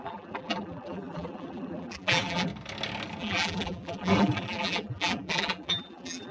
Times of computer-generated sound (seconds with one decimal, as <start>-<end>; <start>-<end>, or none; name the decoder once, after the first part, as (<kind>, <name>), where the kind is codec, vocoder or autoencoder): 0.0-2.5 (vocoder, BigVGAN v2); 3.2-6.3